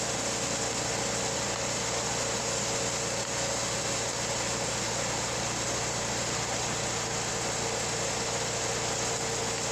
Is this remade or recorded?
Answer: recorded